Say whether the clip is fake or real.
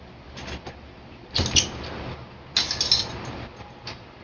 real